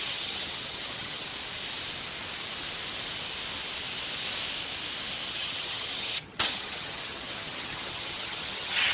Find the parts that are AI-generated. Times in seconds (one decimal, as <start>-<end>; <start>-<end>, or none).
0.0-1.3; 5.3-8.9